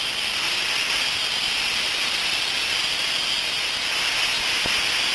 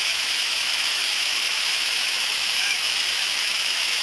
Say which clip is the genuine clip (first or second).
first